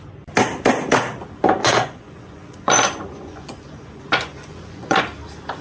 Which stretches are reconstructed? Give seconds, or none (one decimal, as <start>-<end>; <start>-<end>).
1.6-5.0